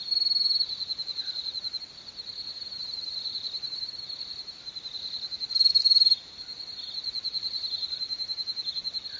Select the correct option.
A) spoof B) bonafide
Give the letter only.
B